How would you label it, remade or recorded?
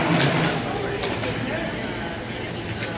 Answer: recorded